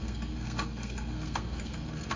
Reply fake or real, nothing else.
fake